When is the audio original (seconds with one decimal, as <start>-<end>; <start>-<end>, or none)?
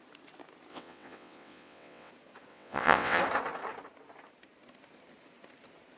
0.0-0.7; 2.1-2.5; 3.2-6.0